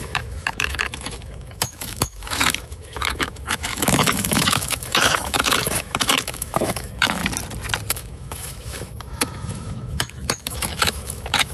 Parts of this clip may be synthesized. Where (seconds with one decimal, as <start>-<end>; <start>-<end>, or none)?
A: 0.0-7.2; 7.9-11.5